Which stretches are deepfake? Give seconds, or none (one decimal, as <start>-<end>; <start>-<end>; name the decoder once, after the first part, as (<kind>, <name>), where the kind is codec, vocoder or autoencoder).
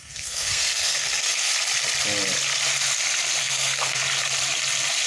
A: 0.0-1.5 (codec, SNAC); 3.4-4.0